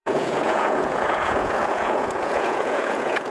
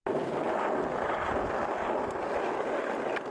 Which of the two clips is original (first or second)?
second